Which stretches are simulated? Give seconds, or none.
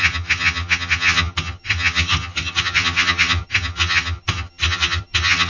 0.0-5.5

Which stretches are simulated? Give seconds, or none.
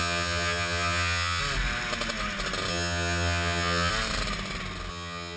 0.0-1.4; 2.7-3.9; 4.9-5.4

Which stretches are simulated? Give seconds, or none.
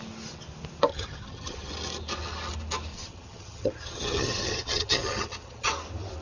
0.9-1.7; 2.9-5.7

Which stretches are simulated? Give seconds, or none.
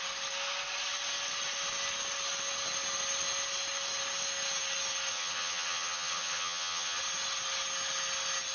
5.1-7.0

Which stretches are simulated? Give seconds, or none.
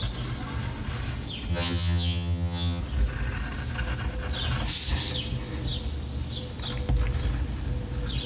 1.5-2.8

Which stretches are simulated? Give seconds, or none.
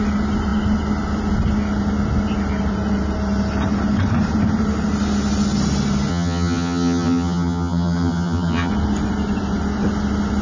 6.1-8.7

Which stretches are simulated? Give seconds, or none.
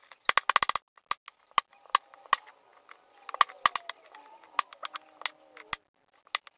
none